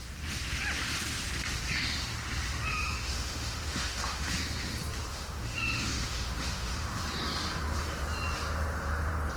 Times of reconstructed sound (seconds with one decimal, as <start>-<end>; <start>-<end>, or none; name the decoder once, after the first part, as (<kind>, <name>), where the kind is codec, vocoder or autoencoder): 2.7-4.3 (autoencoder, DAC-VAE); 5.1-7.0